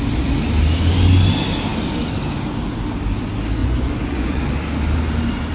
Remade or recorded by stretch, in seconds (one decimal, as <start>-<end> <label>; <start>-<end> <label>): 0.0-3.6 recorded; 3.6-4.4 remade; 4.4-5.5 recorded